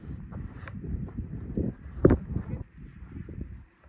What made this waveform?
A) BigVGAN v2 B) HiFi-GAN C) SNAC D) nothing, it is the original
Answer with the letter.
A